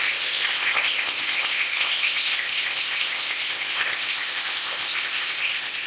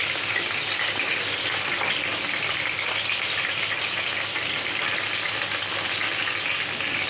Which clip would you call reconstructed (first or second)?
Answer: first